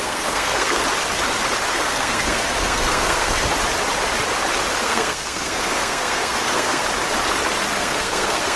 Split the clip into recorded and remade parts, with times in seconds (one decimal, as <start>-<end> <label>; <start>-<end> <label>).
0.0-0.8 remade; 0.8-1.7 recorded; 1.7-3.4 remade; 3.4-4.8 recorded; 4.8-6.8 remade; 6.8-7.7 recorded; 7.7-8.6 remade